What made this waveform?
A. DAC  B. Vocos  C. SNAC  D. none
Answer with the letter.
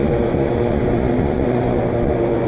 B